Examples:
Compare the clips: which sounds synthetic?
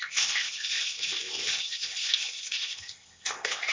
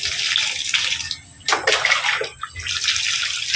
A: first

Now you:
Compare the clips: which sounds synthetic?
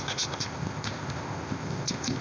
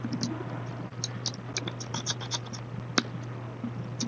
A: first